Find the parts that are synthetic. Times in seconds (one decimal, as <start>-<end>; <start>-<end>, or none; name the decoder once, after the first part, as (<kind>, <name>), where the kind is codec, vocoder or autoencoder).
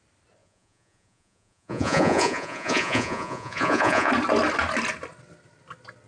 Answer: 0.4-4.1 (vocoder, Vocos)